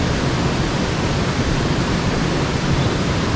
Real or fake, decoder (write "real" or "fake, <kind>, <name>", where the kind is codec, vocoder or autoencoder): fake, vocoder, BigVGAN v2